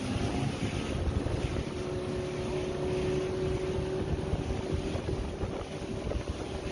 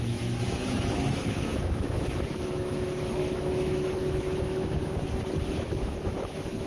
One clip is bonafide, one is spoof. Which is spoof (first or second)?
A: second